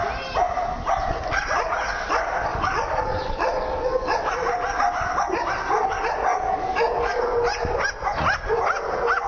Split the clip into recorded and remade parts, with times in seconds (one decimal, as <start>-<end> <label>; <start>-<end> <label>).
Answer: 0.0-2.5 recorded; 2.5-4.3 remade; 4.3-6.3 recorded; 6.3-7.2 remade; 7.2-9.3 recorded